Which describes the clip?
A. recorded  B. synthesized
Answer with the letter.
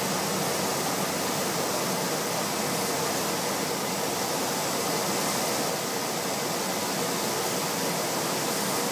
A